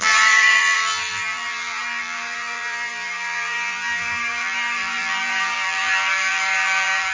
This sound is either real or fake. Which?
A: fake